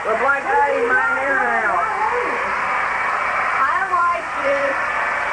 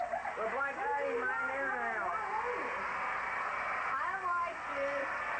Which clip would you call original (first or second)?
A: second